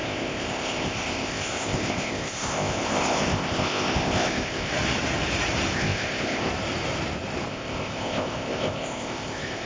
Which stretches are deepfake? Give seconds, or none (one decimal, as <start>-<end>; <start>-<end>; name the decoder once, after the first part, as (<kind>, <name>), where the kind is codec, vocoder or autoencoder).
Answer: 0.0-4.7 (codec, ZipCodec); 5.7-6.5; 7.5-9.7